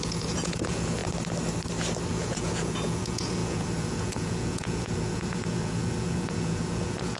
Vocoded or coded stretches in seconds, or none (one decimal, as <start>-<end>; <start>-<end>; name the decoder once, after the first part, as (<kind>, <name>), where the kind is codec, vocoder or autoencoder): 0.0-1.0 (vocoder, Vocos); 2.1-7.2